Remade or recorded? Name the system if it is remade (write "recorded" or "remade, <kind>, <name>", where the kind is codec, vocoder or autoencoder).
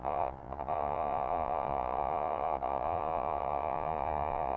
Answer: remade, vocoder, Vocos